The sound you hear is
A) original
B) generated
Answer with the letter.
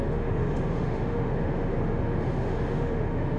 B